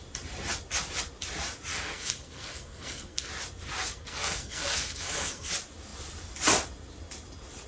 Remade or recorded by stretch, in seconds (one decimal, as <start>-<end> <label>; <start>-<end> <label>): 0.0-1.7 recorded; 1.7-3.3 remade; 3.3-3.8 recorded; 3.8-5.5 remade; 5.5-7.7 recorded